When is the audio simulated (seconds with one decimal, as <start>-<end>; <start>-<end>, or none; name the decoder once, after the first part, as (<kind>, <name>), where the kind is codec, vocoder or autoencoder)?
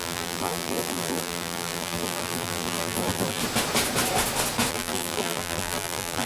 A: 0.0-3.4 (vocoder, BigVGAN v2); 4.7-6.3